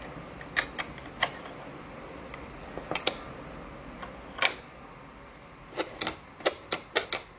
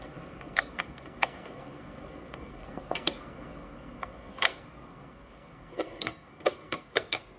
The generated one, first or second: second